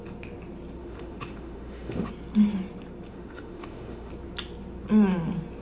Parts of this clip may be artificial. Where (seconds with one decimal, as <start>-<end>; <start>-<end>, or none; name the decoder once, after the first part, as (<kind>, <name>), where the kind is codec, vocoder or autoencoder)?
0.8-2.1 (autoencoder, DAC-VAE); 3.1-4.1